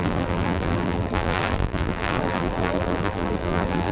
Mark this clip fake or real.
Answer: fake